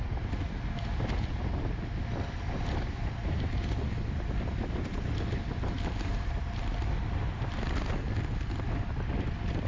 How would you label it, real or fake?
real